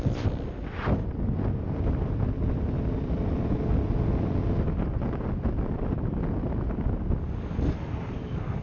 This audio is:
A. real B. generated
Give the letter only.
A